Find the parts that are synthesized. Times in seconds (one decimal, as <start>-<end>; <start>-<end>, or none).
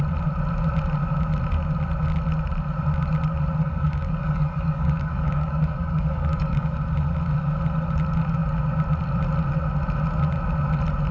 3.6-6.7